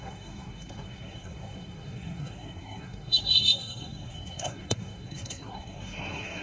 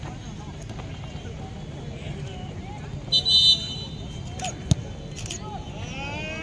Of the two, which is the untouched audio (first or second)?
second